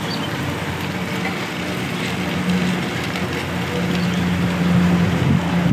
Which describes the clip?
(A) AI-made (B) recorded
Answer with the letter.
B